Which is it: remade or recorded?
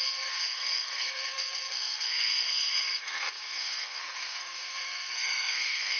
remade